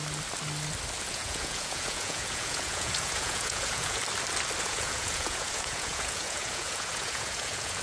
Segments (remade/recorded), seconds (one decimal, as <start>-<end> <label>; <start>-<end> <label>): 0.0-1.0 recorded; 1.0-4.0 remade; 4.0-4.6 recorded; 4.6-7.8 remade